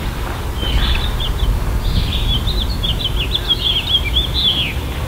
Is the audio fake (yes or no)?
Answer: no